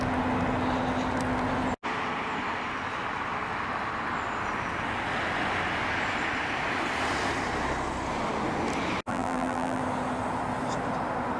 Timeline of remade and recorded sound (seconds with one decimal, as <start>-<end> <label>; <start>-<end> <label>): 0.0-9.1 recorded; 9.1-9.8 remade; 9.8-11.4 recorded